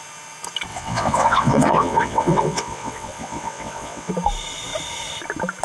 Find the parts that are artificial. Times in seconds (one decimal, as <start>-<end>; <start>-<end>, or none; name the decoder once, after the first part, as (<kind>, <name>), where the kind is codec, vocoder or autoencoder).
0.7-4.1 (vocoder, WaveNeXt)